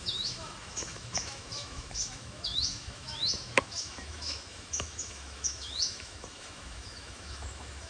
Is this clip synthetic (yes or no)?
yes